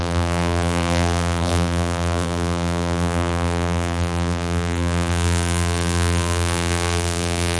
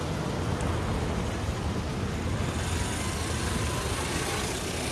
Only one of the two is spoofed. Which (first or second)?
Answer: first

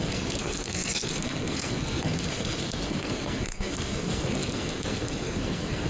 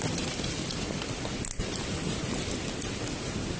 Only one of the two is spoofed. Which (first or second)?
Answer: first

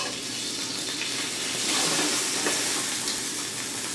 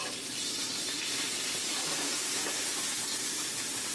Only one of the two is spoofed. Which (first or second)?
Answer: second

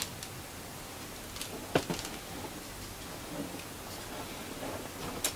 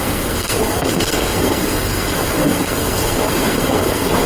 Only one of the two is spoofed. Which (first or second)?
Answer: second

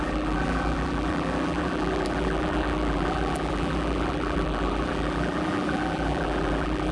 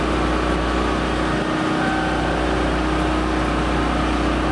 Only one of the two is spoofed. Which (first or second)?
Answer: first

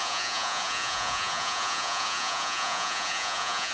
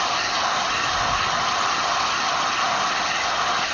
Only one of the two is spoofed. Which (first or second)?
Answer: first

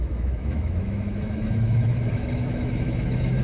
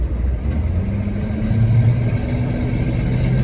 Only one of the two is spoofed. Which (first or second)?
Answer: first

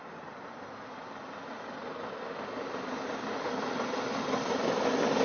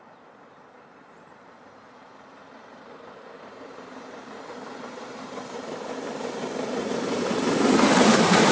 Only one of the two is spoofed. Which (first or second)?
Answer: second